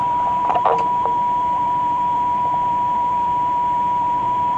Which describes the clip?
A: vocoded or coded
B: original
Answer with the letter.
A